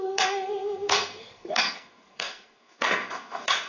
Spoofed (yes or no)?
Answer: yes